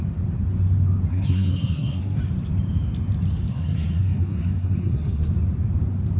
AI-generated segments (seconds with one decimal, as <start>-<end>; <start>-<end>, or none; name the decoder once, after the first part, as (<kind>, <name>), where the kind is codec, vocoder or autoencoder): 1.1-2.2 (codec, SNAC); 3.5-5.3